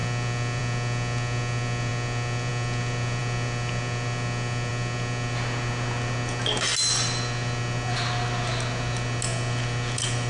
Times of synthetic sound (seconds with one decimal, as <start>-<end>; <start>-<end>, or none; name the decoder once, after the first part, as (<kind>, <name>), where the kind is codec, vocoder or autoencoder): none